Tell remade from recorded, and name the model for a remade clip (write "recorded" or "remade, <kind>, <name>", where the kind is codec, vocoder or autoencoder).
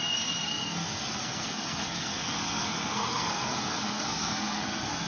remade, codec, SNAC